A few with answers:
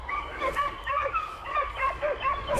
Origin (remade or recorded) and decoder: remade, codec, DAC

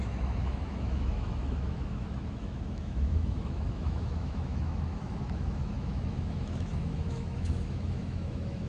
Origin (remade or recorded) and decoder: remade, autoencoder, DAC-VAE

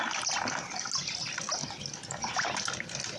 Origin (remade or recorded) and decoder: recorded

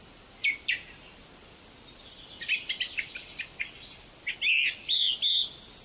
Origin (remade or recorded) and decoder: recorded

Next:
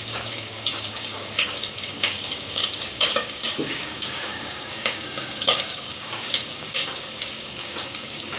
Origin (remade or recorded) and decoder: remade, codec, DAC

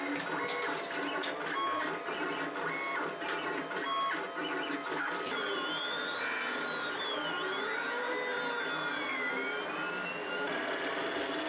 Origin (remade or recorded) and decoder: recorded